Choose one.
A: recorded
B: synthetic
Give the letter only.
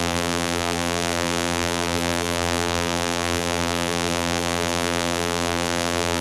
B